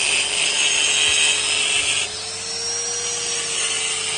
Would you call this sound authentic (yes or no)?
yes